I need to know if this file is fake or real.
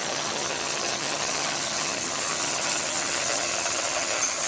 fake